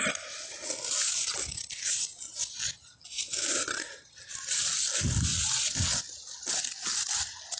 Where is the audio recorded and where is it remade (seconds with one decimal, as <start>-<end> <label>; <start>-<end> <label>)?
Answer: 0.0-5.3 recorded; 5.3-6.0 remade; 6.0-7.6 recorded